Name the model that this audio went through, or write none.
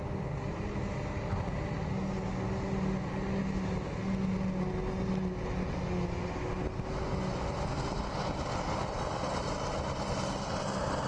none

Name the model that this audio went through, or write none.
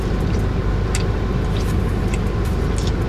none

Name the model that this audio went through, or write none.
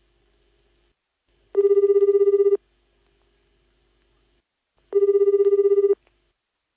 none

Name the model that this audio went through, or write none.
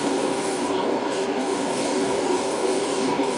codec, DAC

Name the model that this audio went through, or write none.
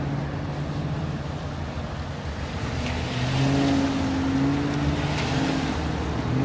none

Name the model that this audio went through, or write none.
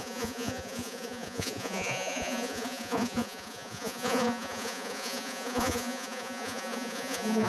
vocoder, Vocos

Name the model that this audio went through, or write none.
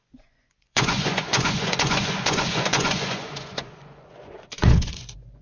vocoder, Vocos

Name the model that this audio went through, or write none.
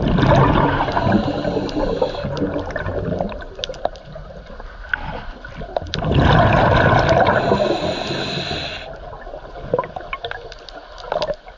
none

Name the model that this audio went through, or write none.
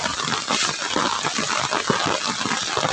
none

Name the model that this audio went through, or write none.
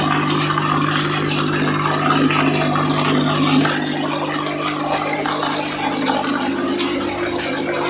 none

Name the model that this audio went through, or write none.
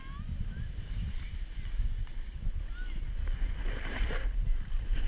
none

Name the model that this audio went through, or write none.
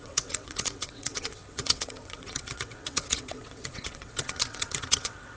vocoder, WaveNeXt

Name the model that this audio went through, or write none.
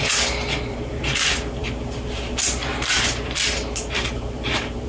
vocoder, BigVGAN v2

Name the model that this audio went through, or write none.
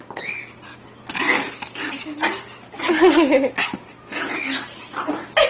none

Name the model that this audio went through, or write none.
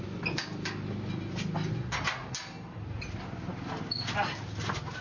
none